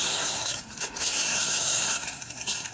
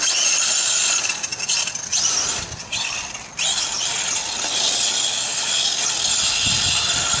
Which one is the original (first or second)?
second